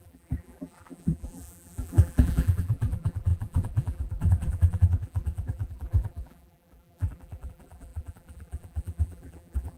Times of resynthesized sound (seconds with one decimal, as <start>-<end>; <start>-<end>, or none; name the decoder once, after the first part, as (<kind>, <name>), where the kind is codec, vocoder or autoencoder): 0.0-9.8 (vocoder, BigVGAN v2)